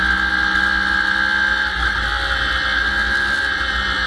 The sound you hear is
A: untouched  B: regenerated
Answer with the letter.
A